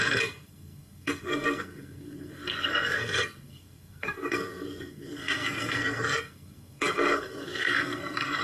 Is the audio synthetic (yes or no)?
yes